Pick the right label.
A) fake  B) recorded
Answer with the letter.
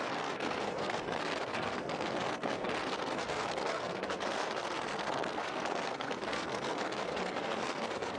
A